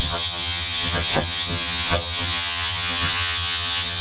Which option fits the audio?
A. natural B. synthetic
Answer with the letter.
B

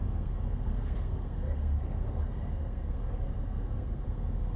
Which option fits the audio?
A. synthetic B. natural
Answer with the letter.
A